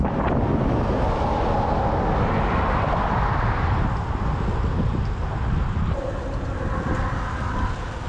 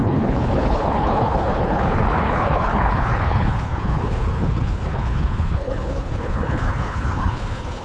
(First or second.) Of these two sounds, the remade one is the second